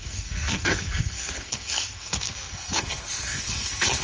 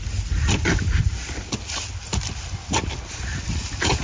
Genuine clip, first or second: second